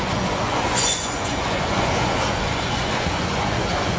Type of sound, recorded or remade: remade